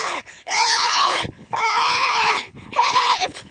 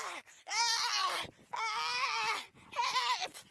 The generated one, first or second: first